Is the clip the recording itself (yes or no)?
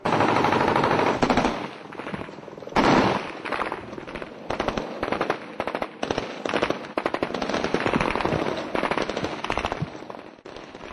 yes